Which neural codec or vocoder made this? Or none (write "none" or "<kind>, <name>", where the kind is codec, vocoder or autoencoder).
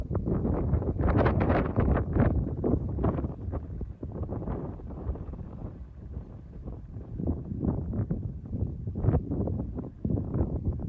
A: vocoder, BigVGAN v2